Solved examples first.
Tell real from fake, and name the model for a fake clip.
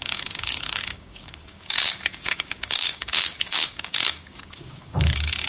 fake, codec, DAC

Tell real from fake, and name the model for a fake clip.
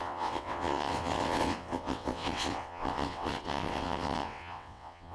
fake, vocoder, WaveNeXt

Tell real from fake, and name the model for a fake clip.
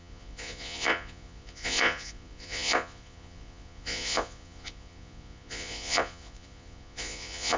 fake, vocoder, Vocos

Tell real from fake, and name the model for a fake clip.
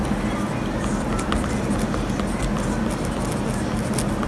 real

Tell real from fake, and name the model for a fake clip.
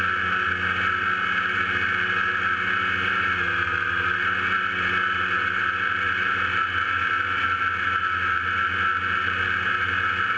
real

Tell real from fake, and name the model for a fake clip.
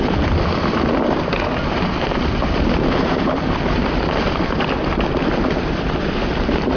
real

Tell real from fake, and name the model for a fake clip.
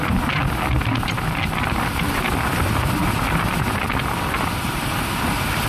real